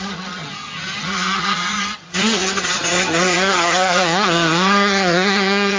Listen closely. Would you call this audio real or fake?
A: fake